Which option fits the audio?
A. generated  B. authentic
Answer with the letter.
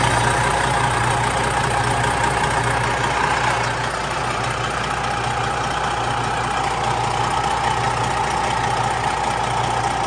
B